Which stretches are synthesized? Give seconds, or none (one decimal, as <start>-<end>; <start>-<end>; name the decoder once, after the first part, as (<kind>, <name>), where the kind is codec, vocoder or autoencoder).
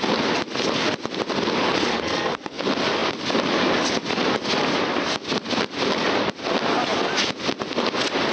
1.9-2.6 (codec, SNAC)